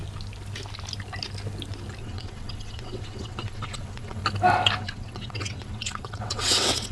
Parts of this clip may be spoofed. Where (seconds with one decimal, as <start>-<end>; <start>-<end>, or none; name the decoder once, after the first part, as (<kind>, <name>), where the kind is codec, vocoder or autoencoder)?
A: 2.0-4.2 (vocoder, WaveNeXt); 4.8-6.9